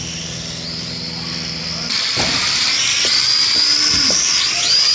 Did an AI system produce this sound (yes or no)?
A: no